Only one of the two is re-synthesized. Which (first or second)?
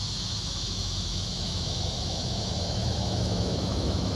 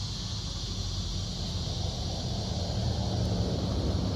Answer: first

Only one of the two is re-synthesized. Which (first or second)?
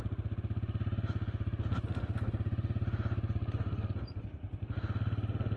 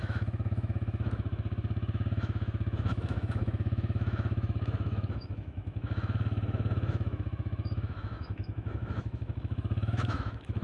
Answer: second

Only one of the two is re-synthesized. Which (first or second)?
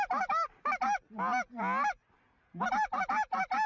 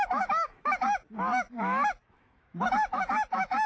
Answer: second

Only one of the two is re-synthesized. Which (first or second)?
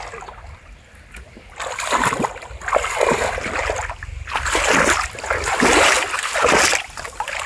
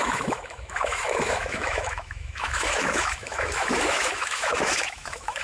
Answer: second